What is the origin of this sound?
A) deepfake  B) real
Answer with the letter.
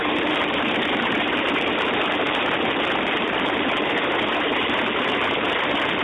B